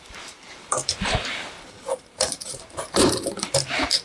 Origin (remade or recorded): remade